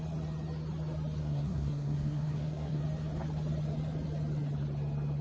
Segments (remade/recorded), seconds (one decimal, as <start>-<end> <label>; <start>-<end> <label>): 0.0-1.2 recorded; 1.2-2.8 remade; 2.8-5.2 recorded